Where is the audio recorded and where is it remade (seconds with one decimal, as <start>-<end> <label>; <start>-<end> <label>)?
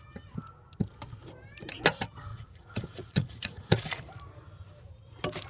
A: 0.0-2.3 recorded; 2.3-4.0 remade; 4.0-5.5 recorded